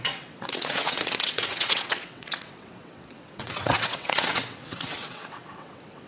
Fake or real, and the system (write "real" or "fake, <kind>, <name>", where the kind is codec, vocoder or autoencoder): fake, vocoder, WaveNeXt